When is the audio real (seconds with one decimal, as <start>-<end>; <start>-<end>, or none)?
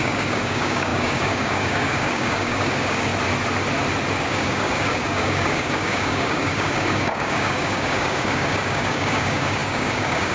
3.1-4.2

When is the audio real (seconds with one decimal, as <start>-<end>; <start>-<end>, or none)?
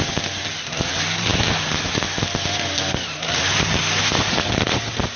0.0-5.2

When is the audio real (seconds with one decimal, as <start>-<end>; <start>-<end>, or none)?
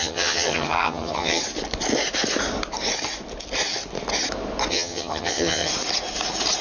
1.4-4.7; 5.7-6.6